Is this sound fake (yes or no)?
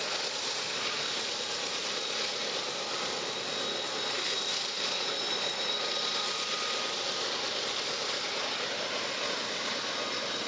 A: no